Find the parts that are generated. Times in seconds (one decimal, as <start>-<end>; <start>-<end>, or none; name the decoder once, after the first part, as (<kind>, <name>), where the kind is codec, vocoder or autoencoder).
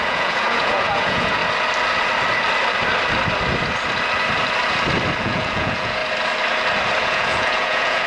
0.0-1.4 (vocoder, Vocos); 5.2-6.0; 7.0-8.1